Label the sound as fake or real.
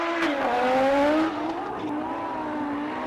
real